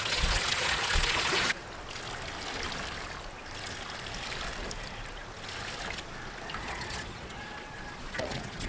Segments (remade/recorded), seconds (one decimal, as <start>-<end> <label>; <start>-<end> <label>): 0.0-1.6 remade; 1.6-6.6 recorded; 6.6-8.7 remade